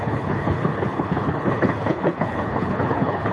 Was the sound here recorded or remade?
remade